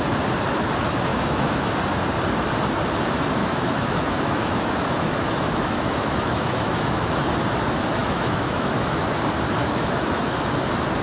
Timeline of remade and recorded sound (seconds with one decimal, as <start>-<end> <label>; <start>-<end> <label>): 0.0-1.1 recorded; 1.1-1.7 remade; 1.7-3.4 recorded; 3.4-7.3 remade; 7.3-8.0 recorded; 8.0-9.0 remade; 9.0-9.6 recorded; 9.6-10.3 remade; 10.3-11.0 recorded